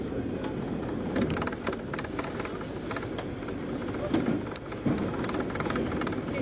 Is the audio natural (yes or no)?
yes